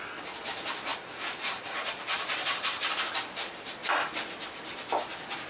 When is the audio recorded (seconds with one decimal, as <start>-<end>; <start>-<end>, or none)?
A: 0.0-0.9; 2.9-3.8; 4.4-5.5